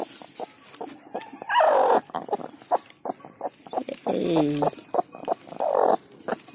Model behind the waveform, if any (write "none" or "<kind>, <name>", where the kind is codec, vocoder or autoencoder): none